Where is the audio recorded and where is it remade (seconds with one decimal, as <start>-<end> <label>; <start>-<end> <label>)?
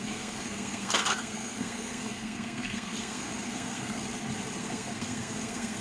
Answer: 0.0-4.0 remade; 4.0-4.6 recorded; 4.6-5.8 remade